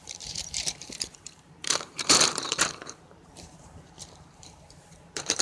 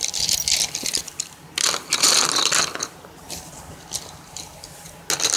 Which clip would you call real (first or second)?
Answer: second